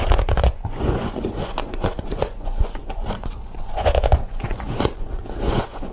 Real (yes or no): no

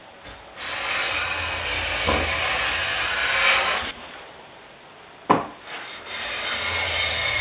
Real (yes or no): yes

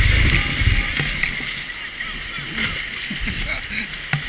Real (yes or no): yes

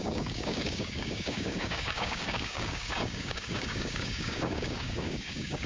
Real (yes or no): no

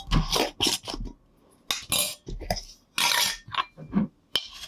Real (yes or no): yes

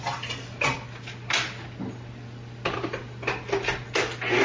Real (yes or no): yes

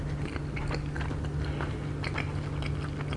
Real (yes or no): yes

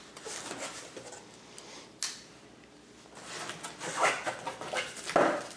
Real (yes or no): yes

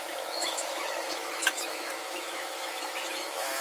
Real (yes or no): no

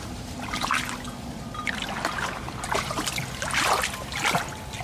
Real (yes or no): yes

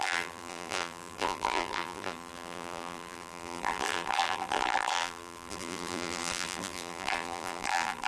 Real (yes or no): no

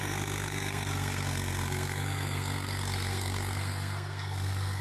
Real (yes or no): no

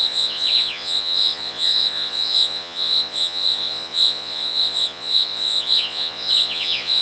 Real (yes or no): no